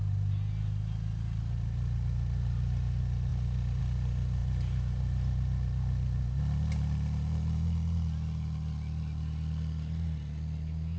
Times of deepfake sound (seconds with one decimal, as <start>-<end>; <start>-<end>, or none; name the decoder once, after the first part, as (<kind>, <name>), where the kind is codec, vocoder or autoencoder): none